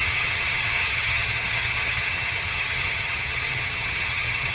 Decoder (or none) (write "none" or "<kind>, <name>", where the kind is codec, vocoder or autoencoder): vocoder, HiFi-GAN